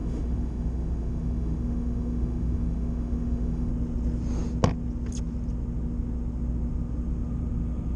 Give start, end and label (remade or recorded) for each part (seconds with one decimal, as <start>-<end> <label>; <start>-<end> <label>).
0.0-3.7 remade; 3.7-8.0 recorded